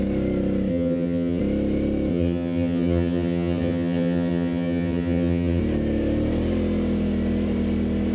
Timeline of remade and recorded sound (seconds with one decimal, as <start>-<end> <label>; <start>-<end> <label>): 0.0-0.7 recorded; 0.7-1.4 remade; 1.4-2.1 recorded; 2.1-5.6 remade; 5.6-8.1 recorded